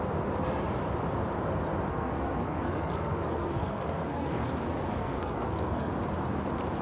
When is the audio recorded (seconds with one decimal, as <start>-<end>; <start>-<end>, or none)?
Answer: 0.0-1.9; 4.5-4.9; 5.9-6.8